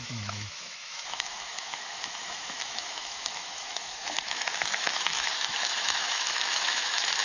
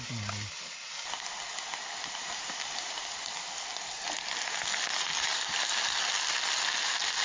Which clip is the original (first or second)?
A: second